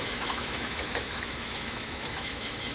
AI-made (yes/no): yes